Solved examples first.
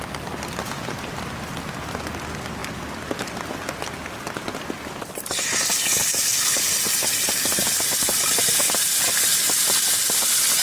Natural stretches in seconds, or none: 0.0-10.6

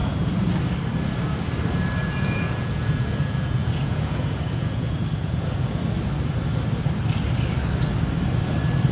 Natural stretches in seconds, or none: 0.5-2.0; 5.8-8.9

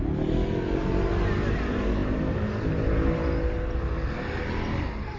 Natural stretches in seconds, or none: 0.0-5.2

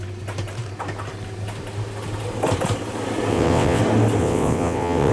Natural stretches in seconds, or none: 0.0-3.3; 3.8-4.2

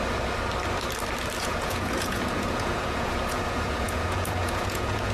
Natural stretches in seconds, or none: 0.0-1.4

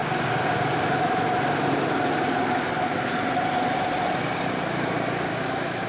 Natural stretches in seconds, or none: 0.0-5.3

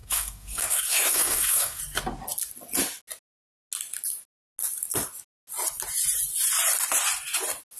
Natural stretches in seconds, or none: 1.8-7.8

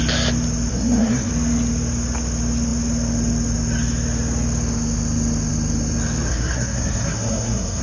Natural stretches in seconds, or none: 0.0-0.7; 1.3-6.3